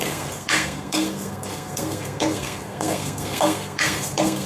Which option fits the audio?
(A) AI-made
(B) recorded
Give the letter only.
A